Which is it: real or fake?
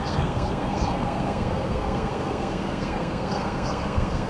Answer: fake